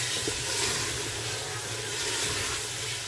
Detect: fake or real real